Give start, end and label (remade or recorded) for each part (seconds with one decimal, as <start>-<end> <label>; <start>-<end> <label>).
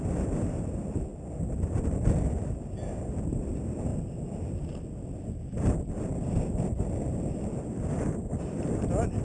0.0-1.1 remade; 1.1-2.2 recorded; 2.2-3.9 remade; 3.9-7.7 recorded; 7.7-9.2 remade